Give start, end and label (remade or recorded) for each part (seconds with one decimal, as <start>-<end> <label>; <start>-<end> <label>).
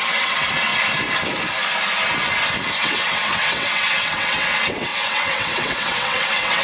0.0-0.7 remade; 0.7-2.8 recorded; 2.8-6.6 remade